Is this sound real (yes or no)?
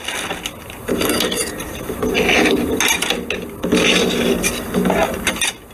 yes